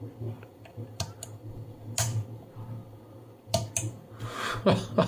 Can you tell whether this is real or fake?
real